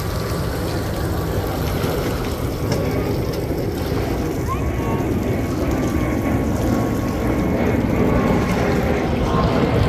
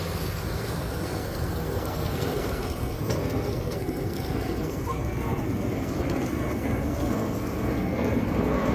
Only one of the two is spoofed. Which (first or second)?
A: second